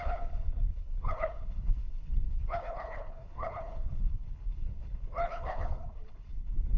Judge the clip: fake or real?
fake